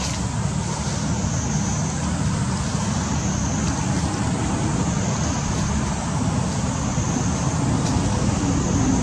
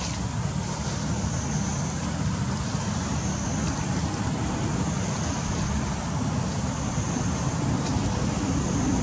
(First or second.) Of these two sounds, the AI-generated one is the second